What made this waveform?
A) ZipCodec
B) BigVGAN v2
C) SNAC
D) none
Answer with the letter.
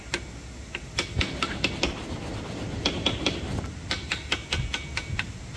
D